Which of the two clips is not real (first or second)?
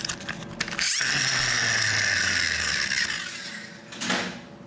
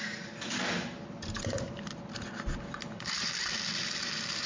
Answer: second